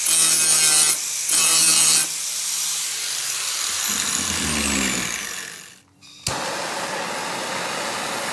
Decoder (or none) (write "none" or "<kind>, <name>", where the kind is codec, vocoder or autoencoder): none